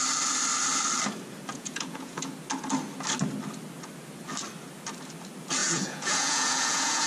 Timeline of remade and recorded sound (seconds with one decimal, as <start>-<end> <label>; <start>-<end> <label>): 0.0-1.5 recorded; 1.5-2.2 remade; 2.2-5.6 recorded; 5.6-7.1 remade